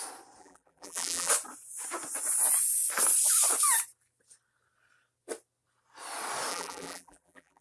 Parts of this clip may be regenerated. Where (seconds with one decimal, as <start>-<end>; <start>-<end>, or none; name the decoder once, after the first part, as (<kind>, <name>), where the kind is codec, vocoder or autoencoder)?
0.4-1.3 (vocoder, BigVGAN v2); 6.5-7.6